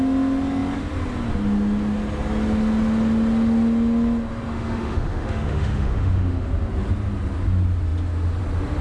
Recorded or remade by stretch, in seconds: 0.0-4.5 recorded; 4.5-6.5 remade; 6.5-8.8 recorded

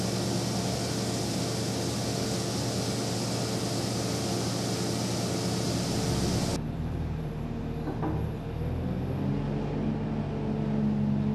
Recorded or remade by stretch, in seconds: 0.0-6.5 recorded; 6.5-7.6 remade; 7.6-11.3 recorded

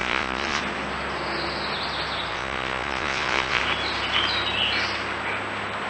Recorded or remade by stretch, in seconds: 0.0-0.6 remade; 0.6-2.3 recorded; 2.3-3.6 remade; 3.6-5.9 recorded

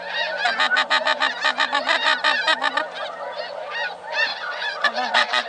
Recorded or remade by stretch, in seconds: 0.0-4.3 recorded; 4.3-5.5 remade